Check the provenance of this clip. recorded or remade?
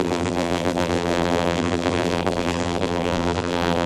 remade